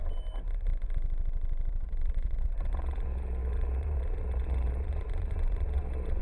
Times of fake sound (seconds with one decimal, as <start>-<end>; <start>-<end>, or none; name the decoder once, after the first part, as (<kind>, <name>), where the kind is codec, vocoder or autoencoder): 1.7-6.2 (vocoder, Vocos)